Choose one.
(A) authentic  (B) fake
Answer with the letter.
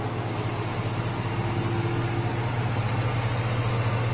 A